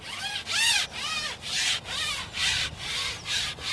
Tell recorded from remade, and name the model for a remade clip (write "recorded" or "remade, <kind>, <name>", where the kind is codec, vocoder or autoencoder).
recorded